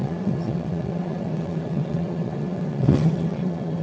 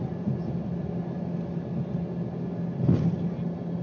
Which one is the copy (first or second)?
first